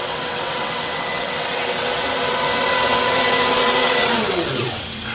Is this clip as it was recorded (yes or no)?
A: no